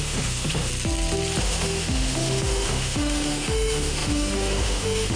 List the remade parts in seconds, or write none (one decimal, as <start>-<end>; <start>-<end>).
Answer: 0.0-0.7; 1.4-5.2